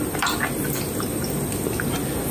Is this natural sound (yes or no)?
yes